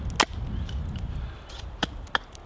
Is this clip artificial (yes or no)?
no